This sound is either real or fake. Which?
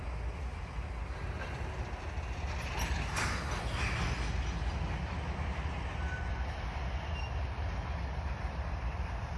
real